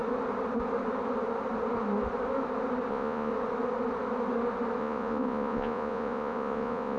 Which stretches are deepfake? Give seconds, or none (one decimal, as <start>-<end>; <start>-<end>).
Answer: 2.9-3.3; 4.8-7.0